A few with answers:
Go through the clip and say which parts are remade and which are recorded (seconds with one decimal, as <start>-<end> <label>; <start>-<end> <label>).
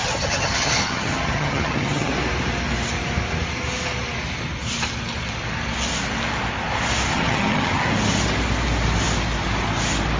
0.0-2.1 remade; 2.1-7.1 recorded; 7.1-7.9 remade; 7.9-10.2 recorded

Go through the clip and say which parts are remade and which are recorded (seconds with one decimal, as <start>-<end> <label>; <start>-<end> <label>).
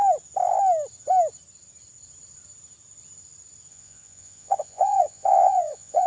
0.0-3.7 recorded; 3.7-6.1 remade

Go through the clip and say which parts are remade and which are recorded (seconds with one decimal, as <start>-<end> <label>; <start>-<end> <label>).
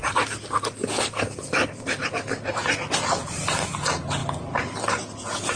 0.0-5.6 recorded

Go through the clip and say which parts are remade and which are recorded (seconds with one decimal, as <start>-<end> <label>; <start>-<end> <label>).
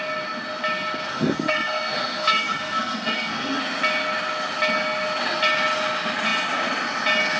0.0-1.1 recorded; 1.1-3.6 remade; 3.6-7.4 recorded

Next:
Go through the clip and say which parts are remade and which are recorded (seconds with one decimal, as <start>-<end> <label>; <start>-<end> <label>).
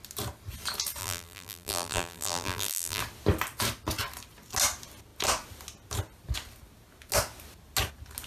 0.0-1.0 recorded; 1.0-3.0 remade; 3.0-8.3 recorded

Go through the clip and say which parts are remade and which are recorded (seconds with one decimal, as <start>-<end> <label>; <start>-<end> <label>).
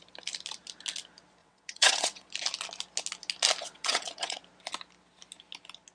0.0-1.4 recorded; 1.4-2.3 remade; 2.3-3.6 recorded; 3.6-4.4 remade; 4.4-5.9 recorded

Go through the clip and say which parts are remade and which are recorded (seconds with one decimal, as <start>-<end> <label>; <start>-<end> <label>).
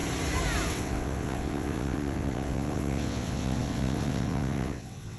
0.0-0.7 recorded; 0.7-5.2 remade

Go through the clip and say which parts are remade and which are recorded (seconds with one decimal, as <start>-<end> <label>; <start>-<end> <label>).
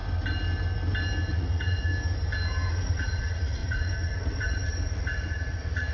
0.0-1.3 recorded; 1.3-1.9 remade; 1.9-2.7 recorded; 2.7-5.9 remade